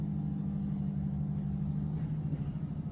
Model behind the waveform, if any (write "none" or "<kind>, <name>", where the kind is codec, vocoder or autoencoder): none